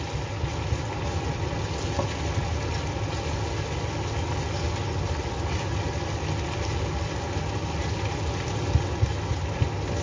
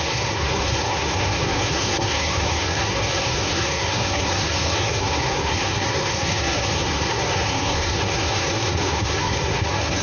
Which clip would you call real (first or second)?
first